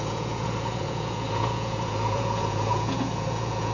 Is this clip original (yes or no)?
no